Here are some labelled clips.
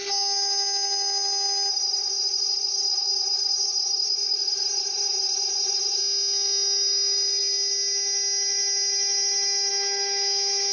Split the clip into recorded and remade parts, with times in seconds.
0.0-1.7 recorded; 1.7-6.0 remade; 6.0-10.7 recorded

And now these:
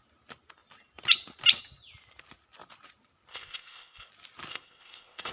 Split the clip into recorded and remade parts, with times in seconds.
0.0-3.3 recorded; 3.3-4.1 remade; 4.1-4.5 recorded; 4.5-5.3 remade

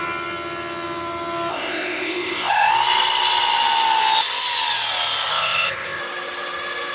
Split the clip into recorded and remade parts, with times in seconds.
0.0-1.5 recorded; 1.5-2.7 remade; 2.7-5.3 recorded; 5.3-6.0 remade; 6.0-6.9 recorded

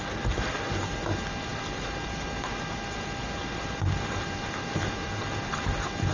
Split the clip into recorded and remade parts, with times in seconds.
0.0-6.1 recorded

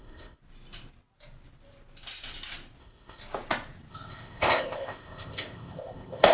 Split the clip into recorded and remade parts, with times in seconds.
0.0-0.4 remade; 0.4-2.8 recorded; 2.8-3.2 remade; 3.2-3.9 recorded; 3.9-6.3 remade

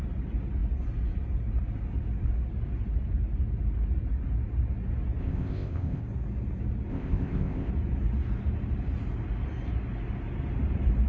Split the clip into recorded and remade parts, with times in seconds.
0.0-5.2 recorded; 5.2-6.0 remade; 6.0-6.9 recorded; 6.9-7.7 remade; 7.7-11.1 recorded